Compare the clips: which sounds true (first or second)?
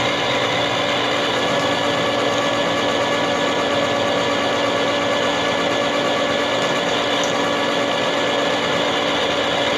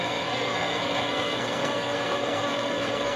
first